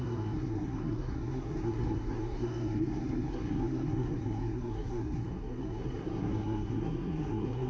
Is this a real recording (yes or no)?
no